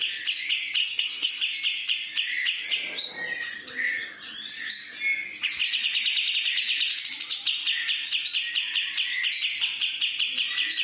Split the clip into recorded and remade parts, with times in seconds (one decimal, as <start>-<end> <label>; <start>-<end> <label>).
0.0-0.8 recorded; 0.8-1.4 remade; 1.4-10.8 recorded